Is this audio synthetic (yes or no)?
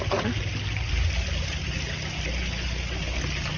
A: no